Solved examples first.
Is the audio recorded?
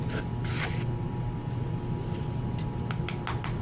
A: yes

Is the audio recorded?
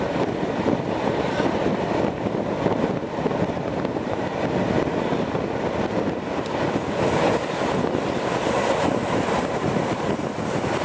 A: yes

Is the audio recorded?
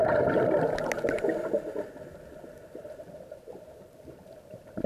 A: yes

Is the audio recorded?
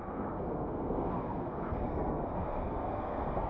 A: no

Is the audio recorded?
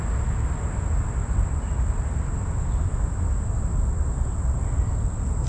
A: yes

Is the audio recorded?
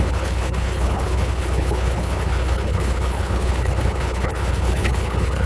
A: no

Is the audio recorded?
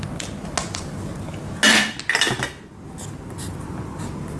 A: yes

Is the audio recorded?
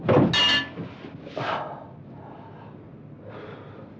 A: yes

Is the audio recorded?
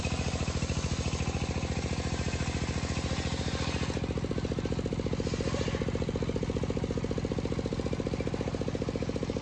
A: yes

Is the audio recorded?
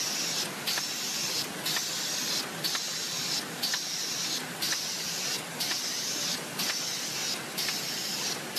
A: yes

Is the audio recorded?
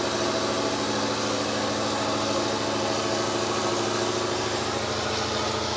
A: yes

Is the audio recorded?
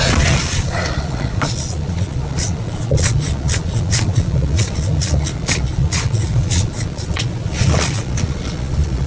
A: no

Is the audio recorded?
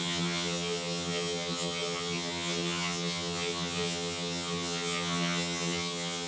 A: no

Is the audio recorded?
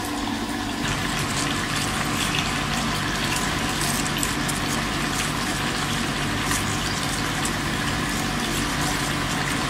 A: yes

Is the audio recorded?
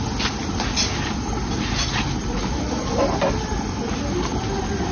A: yes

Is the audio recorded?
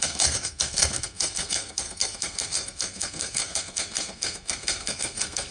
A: no